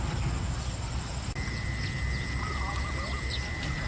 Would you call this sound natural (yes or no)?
yes